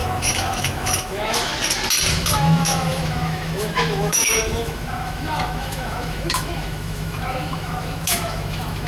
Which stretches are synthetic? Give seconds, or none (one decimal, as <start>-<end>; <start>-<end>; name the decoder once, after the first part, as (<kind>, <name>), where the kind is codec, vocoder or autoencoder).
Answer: 0.0-1.5 (autoencoder, DAC-VAE); 2.1-8.9